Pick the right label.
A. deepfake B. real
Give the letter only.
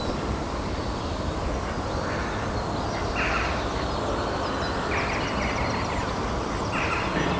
B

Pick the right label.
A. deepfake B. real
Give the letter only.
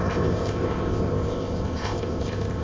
A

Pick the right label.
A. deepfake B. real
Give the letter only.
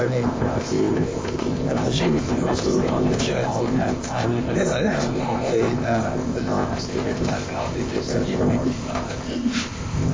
A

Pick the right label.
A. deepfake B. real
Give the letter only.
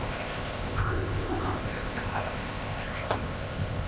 A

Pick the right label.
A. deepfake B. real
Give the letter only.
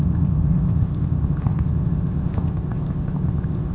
A